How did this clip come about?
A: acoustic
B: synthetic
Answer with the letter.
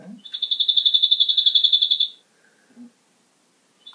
A